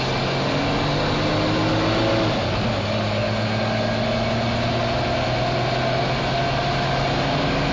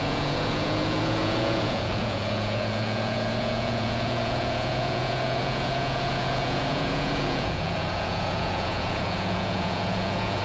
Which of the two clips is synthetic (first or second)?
second